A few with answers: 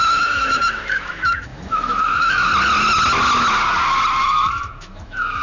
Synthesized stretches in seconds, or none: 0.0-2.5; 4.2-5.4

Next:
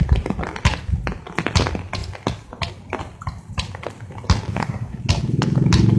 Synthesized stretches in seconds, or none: 4.5-5.0

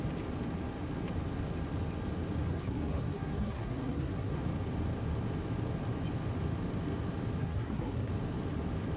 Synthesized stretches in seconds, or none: 2.5-4.4; 7.4-8.1

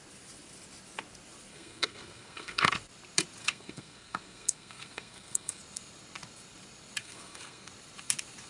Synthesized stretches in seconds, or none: 1.5-2.7; 3.4-5.6; 7.0-7.7

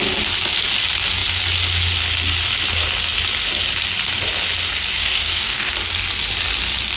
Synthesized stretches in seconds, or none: 5.0-5.7